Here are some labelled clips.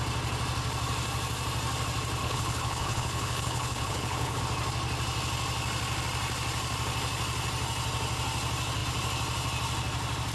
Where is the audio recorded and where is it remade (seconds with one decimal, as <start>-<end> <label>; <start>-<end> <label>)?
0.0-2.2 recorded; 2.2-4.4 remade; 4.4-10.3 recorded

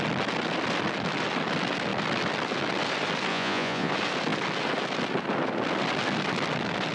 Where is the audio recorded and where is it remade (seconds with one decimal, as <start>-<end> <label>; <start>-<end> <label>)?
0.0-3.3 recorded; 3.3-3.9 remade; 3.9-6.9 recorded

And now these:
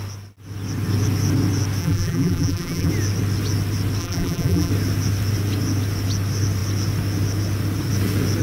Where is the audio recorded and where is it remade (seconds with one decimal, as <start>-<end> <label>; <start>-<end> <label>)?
0.0-1.8 recorded; 1.8-2.9 remade; 2.9-4.0 recorded; 4.0-4.7 remade; 4.7-8.4 recorded

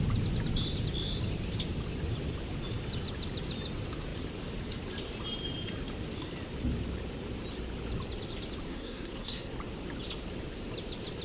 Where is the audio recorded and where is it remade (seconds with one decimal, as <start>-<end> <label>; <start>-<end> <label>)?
0.0-8.7 recorded; 8.7-9.5 remade; 9.5-11.2 recorded